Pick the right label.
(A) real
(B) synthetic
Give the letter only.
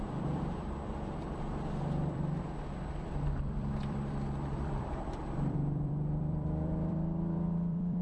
B